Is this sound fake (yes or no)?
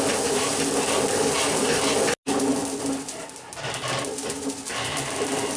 no